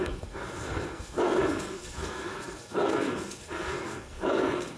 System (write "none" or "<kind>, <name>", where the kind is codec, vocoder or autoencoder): codec, SNAC